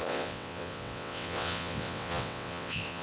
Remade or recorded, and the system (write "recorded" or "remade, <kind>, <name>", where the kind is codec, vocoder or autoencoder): remade, vocoder, WaveNeXt